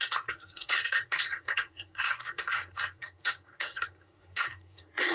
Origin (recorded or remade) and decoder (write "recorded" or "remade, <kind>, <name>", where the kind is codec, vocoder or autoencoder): remade, codec, SNAC